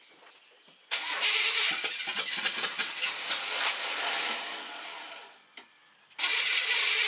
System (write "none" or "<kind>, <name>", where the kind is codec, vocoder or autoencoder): none